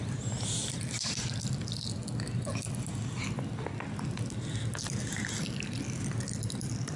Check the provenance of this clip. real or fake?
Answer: real